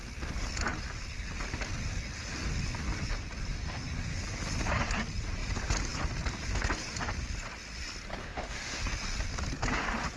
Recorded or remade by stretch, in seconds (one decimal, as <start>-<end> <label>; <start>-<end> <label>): 0.0-8.2 recorded; 8.2-8.8 remade; 8.8-10.2 recorded